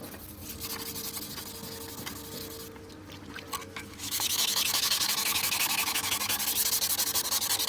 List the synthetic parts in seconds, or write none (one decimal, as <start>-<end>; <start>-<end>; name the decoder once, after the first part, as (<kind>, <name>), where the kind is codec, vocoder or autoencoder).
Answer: 3.6-6.1 (autoencoder, DAC-VAE)